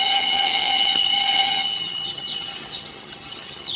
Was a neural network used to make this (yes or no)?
yes